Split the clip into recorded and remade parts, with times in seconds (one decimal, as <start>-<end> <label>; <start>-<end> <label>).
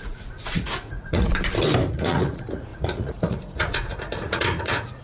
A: 0.0-1.3 remade; 1.3-1.9 recorded; 1.9-5.0 remade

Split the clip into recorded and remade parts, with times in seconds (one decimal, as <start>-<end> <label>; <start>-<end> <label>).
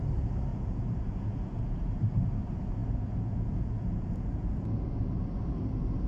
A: 0.0-0.5 recorded; 0.5-2.0 remade; 2.0-2.8 recorded; 2.8-5.2 remade; 5.2-6.1 recorded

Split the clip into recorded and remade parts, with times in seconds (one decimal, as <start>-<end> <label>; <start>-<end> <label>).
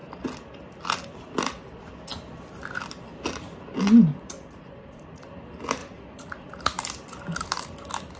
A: 0.0-4.1 recorded; 4.1-5.3 remade; 5.3-5.8 recorded; 5.8-6.5 remade; 6.5-8.2 recorded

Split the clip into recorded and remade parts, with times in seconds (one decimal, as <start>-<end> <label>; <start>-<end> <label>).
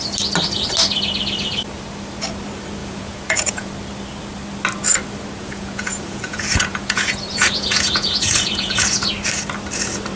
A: 0.0-2.8 recorded; 2.8-3.7 remade; 3.7-5.4 recorded; 5.4-9.1 remade; 9.1-10.2 recorded